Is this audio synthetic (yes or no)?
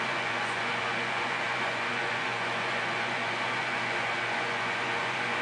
yes